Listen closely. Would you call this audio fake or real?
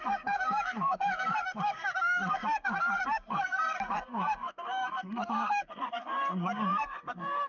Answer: fake